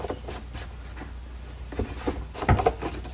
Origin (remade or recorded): recorded